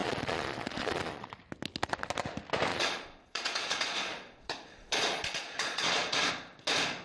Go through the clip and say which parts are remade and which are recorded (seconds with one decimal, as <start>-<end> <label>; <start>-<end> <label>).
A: 0.0-1.4 remade; 1.4-2.7 recorded; 2.7-6.3 remade; 6.3-7.0 recorded